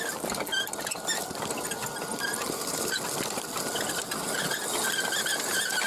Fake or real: real